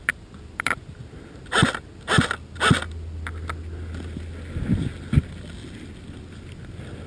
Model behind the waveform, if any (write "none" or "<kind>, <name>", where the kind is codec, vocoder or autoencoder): none